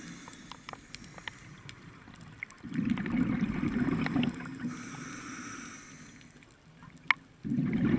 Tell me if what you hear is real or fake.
real